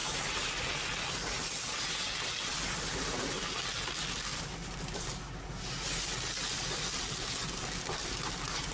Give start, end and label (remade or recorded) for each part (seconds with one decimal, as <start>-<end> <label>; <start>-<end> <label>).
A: 0.0-0.5 remade; 0.5-8.7 recorded